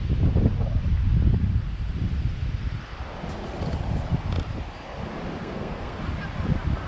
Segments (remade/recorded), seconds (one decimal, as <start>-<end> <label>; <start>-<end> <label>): 0.0-5.4 recorded; 5.4-6.0 remade; 6.0-6.9 recorded